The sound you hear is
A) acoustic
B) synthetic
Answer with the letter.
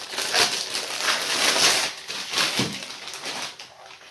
A